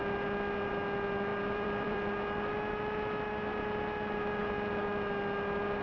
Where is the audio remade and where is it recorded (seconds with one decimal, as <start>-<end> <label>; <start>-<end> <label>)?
0.0-1.3 recorded; 1.3-2.1 remade; 2.1-5.8 recorded